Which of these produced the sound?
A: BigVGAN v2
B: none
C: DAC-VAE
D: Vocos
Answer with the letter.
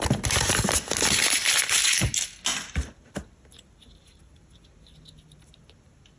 B